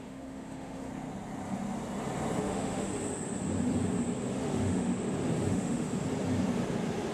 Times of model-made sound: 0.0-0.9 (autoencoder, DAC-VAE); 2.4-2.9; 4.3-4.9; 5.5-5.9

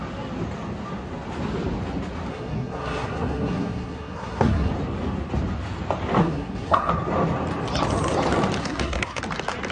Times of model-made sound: 2.3-4.7 (codec, SNAC); 6.2-6.9; 8.6-9.2

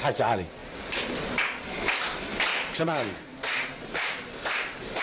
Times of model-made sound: 0.6-1.1 (vocoder, BigVGAN v2); 2.5-5.0